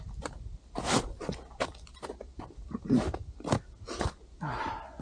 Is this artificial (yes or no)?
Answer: no